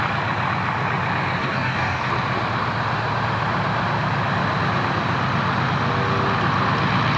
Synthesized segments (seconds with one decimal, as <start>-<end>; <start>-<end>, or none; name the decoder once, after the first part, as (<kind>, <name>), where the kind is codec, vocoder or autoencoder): 1.4-2.1 (codec, DAC)